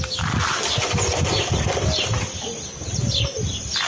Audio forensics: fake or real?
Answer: real